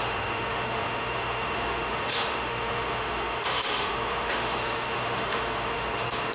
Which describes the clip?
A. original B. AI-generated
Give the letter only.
B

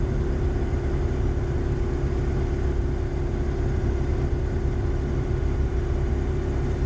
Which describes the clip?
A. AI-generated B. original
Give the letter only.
B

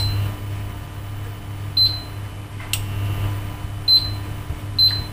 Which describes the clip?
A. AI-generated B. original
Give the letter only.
B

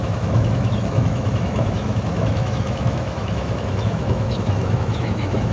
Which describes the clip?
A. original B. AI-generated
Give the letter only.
B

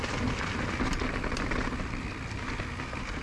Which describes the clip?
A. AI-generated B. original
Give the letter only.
B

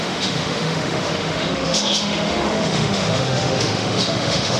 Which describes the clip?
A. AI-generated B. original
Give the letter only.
A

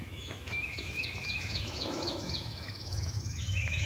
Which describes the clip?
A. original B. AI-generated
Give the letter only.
B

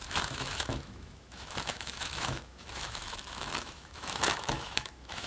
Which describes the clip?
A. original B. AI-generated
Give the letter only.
B